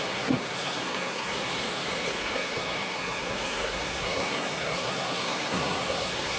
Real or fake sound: fake